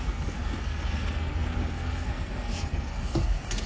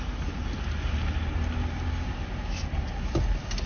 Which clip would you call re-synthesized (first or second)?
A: first